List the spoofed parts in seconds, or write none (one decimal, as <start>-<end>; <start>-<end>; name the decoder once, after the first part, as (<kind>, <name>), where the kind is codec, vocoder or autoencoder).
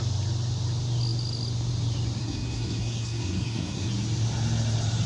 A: 2.2-3.9 (codec, SNAC)